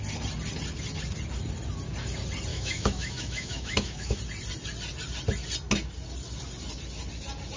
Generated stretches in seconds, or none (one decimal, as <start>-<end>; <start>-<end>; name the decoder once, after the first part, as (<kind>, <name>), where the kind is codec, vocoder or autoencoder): 2.5-4.2 (autoencoder, DAC-VAE)